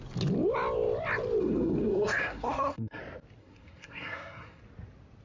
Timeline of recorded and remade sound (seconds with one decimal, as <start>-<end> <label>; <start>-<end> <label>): 0.0-1.4 recorded; 1.4-3.0 remade; 3.0-3.4 recorded; 3.4-4.6 remade; 4.6-5.2 recorded